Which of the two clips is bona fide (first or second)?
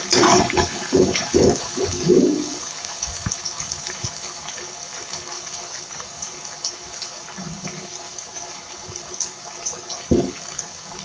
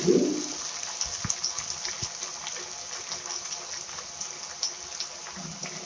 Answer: second